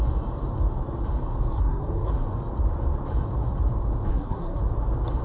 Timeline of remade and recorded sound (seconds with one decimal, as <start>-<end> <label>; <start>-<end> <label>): 0.0-1.5 recorded; 1.5-2.1 remade; 2.1-4.1 recorded; 4.1-4.6 remade; 4.6-5.2 recorded